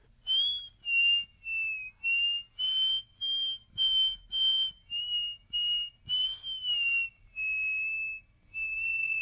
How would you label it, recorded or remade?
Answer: recorded